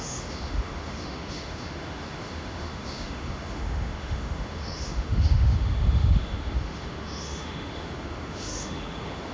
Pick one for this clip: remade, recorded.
remade